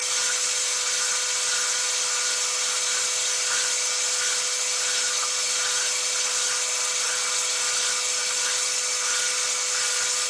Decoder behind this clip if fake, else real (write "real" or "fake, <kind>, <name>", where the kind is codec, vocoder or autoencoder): real